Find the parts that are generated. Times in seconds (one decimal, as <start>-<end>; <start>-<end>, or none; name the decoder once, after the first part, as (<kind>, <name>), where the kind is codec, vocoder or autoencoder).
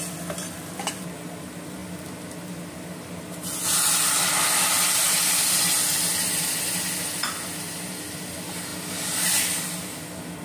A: none